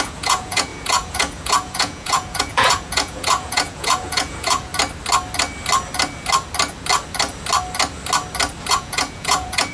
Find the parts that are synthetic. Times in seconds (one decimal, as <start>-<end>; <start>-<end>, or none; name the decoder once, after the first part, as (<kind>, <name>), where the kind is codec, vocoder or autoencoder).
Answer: 0.0-4.7 (vocoder, Vocos); 8.7-9.7